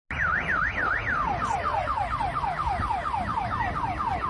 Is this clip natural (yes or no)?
yes